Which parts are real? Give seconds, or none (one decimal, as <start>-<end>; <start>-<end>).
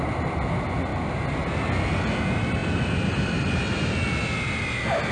0.0-5.1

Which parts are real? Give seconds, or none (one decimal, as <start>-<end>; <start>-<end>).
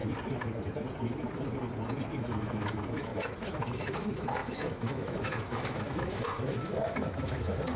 0.0-2.2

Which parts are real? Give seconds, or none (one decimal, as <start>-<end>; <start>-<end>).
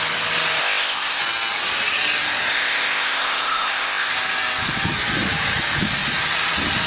0.0-0.6; 1.2-2.5; 4.1-6.9